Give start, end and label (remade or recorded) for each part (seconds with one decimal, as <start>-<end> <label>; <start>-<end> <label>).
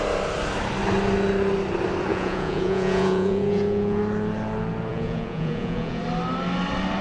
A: 0.0-2.1 recorded; 2.1-4.0 remade; 4.0-4.9 recorded; 4.9-6.0 remade; 6.0-7.0 recorded